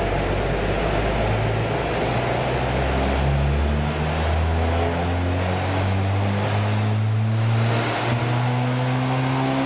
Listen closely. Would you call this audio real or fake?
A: real